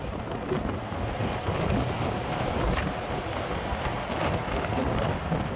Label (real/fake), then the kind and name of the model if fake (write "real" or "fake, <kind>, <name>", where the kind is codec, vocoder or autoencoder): real